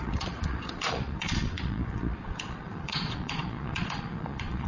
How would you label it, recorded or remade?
remade